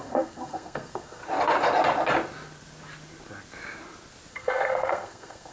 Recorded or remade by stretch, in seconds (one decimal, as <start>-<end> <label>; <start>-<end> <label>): 0.0-1.2 remade; 1.2-4.3 recorded; 4.3-5.5 remade